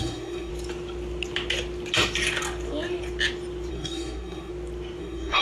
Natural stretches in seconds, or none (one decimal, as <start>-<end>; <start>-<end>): 0.5-3.7; 4.5-5.0